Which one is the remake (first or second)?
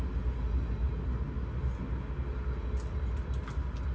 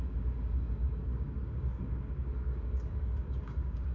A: second